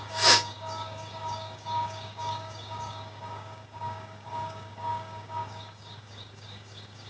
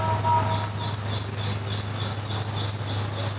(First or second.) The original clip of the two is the second